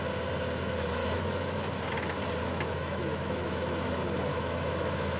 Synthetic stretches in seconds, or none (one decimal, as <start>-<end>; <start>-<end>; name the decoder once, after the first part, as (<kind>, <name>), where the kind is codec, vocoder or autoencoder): 1.0-1.8 (autoencoder, DAC-VAE); 2.8-3.9; 4.3-5.2